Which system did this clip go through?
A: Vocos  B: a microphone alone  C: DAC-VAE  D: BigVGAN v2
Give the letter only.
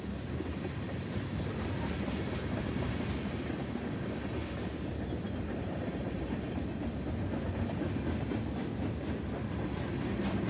B